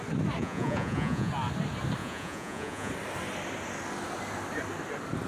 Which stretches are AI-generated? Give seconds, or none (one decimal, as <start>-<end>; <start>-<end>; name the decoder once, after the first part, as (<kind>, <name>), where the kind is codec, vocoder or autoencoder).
0.4-1.3 (vocoder, Vocos); 2.0-2.9